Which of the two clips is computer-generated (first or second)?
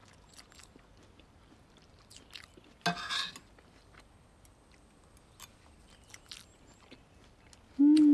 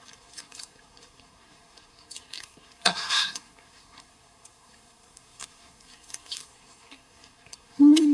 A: second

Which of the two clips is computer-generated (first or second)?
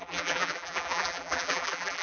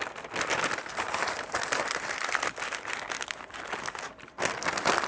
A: first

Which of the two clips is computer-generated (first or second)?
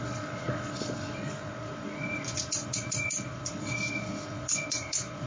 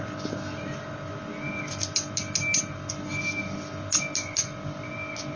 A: first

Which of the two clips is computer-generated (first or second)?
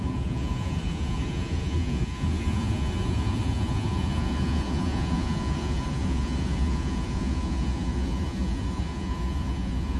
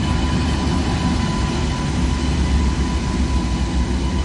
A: first